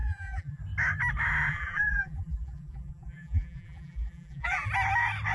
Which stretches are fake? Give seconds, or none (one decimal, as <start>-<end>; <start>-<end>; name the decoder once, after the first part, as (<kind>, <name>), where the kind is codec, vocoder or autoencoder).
0.0-0.6 (vocoder, BigVGAN v2); 1.5-4.7